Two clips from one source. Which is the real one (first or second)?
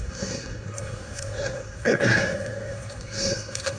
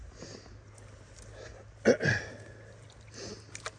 second